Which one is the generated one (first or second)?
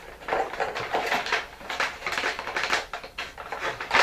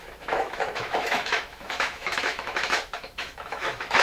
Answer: second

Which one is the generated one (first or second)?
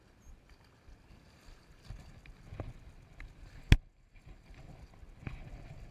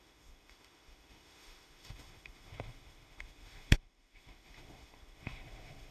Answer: second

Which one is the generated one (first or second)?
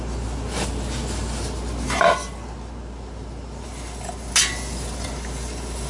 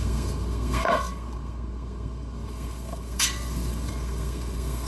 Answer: second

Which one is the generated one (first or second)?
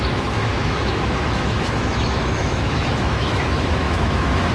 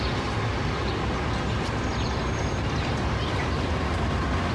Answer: first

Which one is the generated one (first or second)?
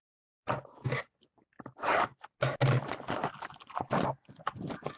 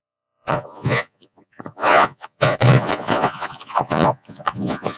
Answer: second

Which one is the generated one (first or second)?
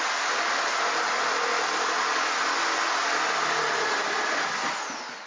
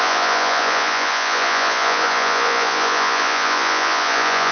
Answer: second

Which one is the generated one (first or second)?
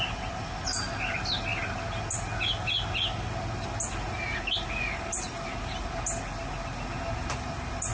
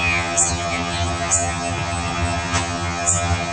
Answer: second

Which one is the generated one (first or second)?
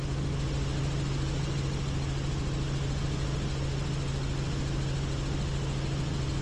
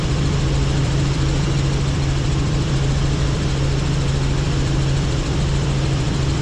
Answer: second